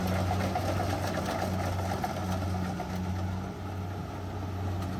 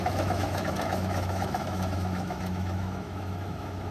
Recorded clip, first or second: first